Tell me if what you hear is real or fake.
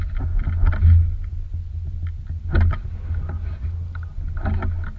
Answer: real